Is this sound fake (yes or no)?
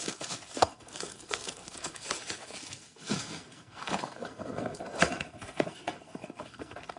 yes